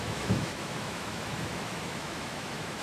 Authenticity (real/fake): fake